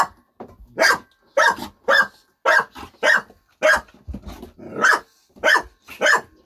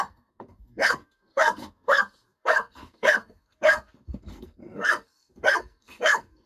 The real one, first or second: first